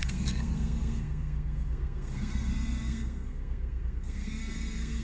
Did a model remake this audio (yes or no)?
yes